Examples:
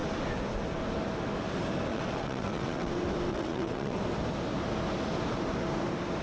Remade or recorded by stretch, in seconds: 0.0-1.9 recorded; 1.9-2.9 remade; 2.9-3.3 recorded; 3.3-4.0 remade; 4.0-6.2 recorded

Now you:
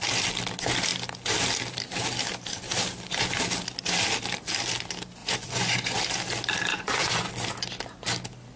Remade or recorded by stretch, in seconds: 0.0-5.2 recorded; 5.2-6.0 remade; 6.0-6.7 recorded; 6.7-7.3 remade; 7.3-8.6 recorded